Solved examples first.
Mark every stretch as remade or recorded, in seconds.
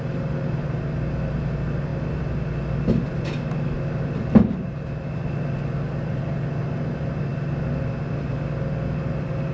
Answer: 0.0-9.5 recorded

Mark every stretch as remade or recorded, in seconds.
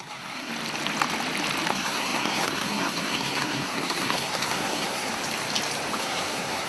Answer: 0.0-0.5 remade; 0.5-1.7 recorded; 1.7-5.1 remade; 5.1-6.0 recorded; 6.0-6.7 remade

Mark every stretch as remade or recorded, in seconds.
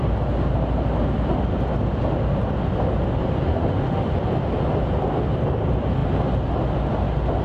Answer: 0.0-3.5 recorded; 3.5-4.1 remade; 4.1-7.4 recorded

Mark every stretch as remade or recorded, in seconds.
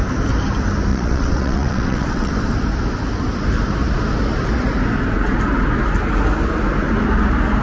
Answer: 0.0-0.9 recorded; 0.9-2.3 remade; 2.3-7.6 recorded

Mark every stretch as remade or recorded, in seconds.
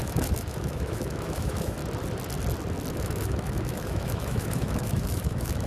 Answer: 0.0-1.8 remade; 1.8-2.9 recorded; 2.9-5.7 remade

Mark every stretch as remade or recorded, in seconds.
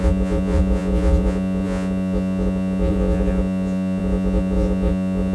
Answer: 0.0-5.3 remade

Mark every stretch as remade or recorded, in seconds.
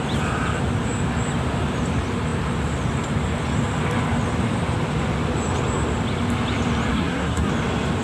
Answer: 0.0-6.9 recorded; 6.9-7.5 remade; 7.5-8.0 recorded